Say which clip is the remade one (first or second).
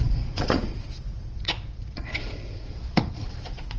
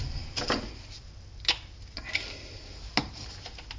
first